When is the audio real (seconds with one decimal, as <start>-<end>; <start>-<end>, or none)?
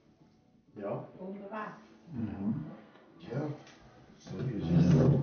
0.0-2.2; 3.2-5.2